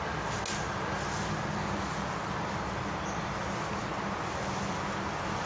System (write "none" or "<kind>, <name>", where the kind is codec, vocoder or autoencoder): none